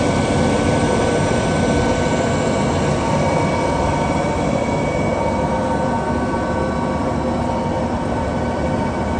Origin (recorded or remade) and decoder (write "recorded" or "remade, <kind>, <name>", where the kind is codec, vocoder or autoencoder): recorded